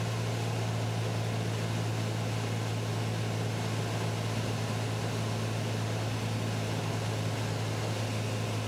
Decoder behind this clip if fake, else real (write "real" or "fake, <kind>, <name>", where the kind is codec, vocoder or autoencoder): real